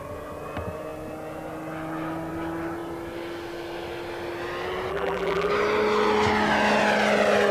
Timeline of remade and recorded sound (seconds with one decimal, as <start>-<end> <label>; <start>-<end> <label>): 0.0-4.9 recorded; 4.9-5.5 remade; 5.5-7.5 recorded